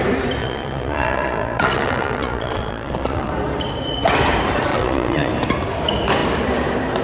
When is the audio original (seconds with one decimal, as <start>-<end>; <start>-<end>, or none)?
0.0-0.4; 3.3-4.7; 5.3-7.0